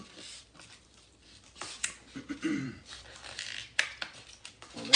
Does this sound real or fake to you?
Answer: fake